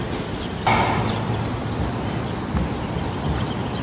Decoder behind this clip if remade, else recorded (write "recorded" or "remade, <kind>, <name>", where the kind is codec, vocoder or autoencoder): recorded